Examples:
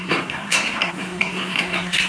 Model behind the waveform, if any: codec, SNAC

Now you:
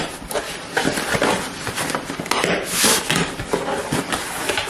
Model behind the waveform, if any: none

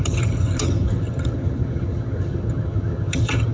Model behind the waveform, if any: vocoder, HiFi-GAN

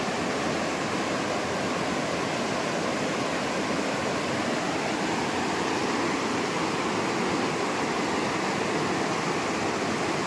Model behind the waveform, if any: none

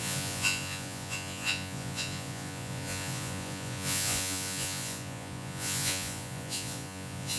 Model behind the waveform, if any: vocoder, Vocos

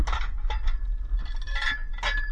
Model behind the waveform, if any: none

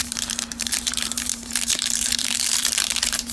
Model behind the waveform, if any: vocoder, BigVGAN v2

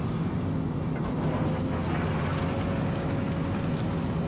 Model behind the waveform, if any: none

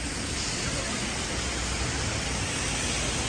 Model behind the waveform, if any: none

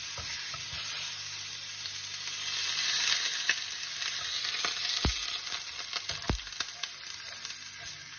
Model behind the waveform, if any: none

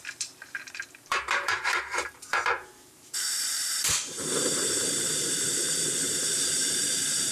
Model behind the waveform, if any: vocoder, BigVGAN v2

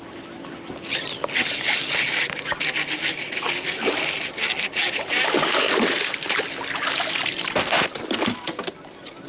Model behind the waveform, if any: none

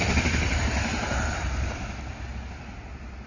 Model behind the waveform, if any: vocoder, BigVGAN v2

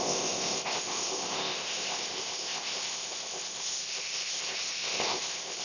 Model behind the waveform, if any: codec, ZipCodec